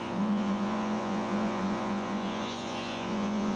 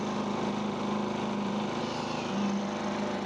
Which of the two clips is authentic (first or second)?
second